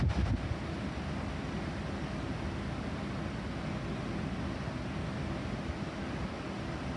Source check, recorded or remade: recorded